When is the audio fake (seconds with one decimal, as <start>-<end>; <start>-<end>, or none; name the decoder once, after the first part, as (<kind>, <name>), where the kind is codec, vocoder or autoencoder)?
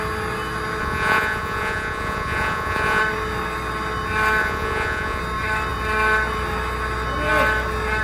0.8-3.0 (vocoder, Vocos); 4.4-5.2